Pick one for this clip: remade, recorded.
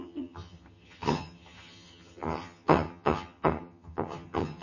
remade